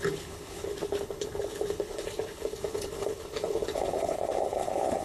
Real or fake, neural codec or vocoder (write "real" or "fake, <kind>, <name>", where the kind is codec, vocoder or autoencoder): fake, codec, HILCodec